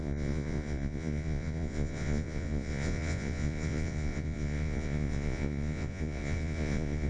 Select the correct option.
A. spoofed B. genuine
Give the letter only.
A